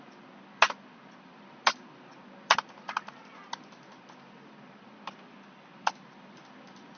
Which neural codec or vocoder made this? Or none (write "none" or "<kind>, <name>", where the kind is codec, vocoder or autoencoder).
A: none